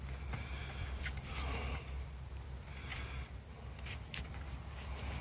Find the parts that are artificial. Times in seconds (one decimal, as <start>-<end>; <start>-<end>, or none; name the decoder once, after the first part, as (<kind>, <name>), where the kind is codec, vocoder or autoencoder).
none